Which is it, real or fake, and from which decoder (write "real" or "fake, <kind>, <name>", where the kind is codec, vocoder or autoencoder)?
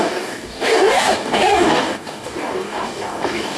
fake, codec, DAC